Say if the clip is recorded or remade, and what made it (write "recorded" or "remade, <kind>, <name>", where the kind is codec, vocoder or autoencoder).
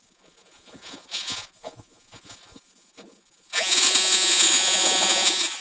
remade, vocoder, Vocos